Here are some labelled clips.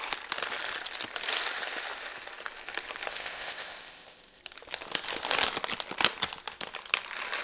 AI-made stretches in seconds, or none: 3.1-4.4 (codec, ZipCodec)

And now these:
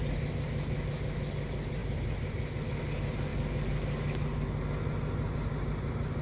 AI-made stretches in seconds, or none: none

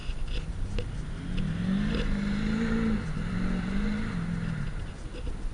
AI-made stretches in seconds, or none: none